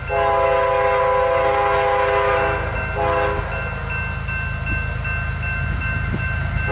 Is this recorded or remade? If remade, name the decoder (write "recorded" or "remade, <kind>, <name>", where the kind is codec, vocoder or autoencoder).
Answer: recorded